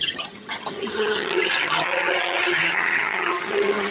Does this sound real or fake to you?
fake